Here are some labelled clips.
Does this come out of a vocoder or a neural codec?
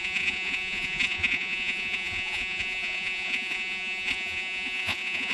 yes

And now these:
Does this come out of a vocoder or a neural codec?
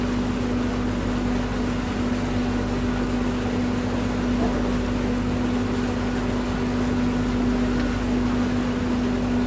no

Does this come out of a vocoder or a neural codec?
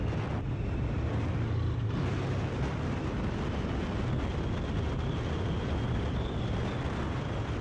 no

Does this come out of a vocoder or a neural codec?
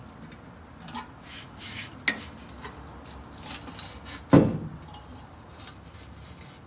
no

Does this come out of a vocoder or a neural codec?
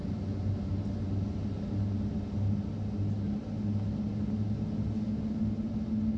no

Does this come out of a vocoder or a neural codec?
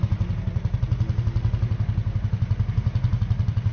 no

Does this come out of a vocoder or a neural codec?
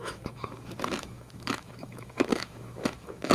yes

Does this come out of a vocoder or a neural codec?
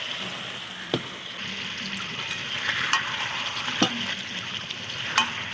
no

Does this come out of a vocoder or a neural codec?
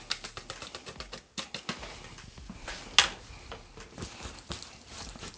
no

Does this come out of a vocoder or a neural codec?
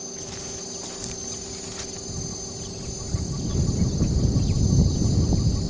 no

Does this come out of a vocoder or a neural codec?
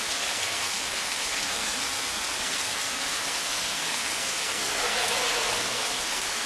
yes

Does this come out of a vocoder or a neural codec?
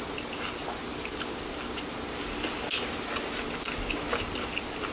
no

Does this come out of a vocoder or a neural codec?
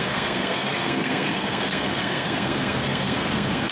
yes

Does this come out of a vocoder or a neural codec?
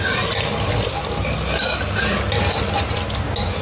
no